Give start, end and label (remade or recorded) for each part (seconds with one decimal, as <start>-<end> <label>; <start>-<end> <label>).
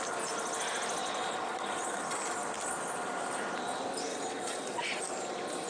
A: 0.0-1.0 recorded; 1.0-2.0 remade; 2.0-4.1 recorded; 4.1-5.0 remade; 5.0-5.7 recorded